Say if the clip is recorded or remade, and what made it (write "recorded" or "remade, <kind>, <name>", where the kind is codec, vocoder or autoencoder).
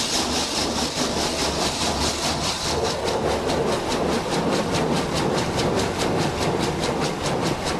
recorded